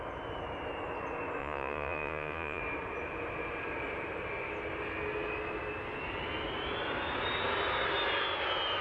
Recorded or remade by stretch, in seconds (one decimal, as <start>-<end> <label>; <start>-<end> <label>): 0.0-1.4 recorded; 1.4-2.6 remade; 2.6-8.8 recorded